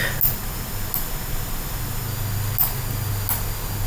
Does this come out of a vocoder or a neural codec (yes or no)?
no